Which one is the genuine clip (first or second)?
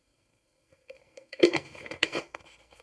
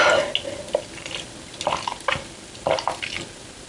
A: second